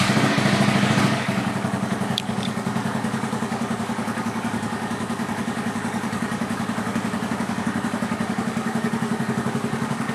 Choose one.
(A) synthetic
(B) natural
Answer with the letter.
A